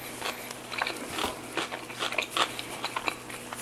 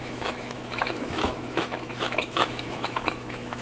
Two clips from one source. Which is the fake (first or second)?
second